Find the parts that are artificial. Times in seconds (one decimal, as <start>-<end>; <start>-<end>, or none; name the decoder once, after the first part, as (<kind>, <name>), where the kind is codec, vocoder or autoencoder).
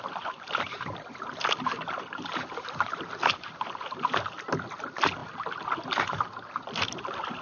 none